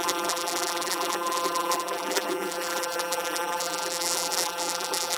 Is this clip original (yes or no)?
no